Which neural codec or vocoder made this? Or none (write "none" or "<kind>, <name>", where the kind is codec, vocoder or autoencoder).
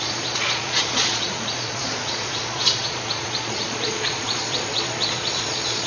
vocoder, Vocos